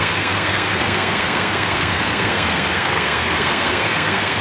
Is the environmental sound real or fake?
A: fake